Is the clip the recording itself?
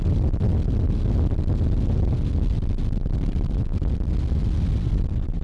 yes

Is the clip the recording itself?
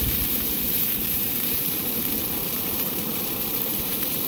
no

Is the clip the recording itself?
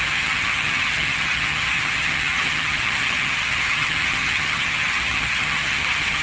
no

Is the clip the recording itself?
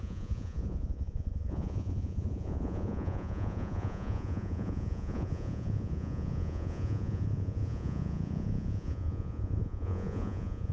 no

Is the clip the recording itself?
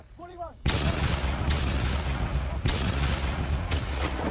no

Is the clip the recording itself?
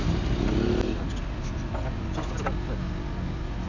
yes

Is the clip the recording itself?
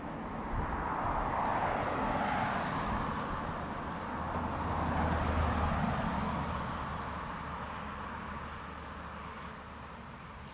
yes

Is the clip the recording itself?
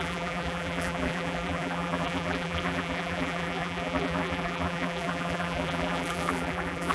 no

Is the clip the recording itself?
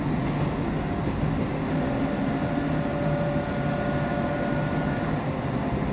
yes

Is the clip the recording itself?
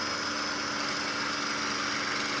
yes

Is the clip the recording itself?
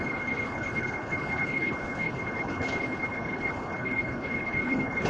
no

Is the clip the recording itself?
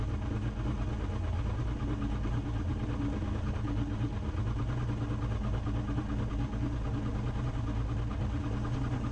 yes